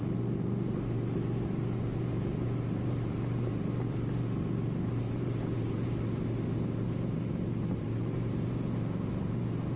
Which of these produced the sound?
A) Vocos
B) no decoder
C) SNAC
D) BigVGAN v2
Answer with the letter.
D